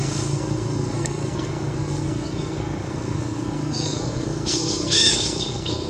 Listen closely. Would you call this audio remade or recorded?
remade